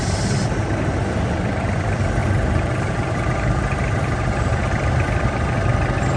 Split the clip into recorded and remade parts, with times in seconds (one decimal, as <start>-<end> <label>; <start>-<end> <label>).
0.0-2.2 recorded; 2.2-4.6 remade; 4.6-6.2 recorded